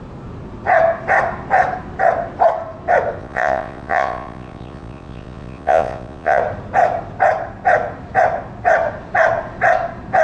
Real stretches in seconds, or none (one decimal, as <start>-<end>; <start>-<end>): 0.0-3.2; 6.4-10.2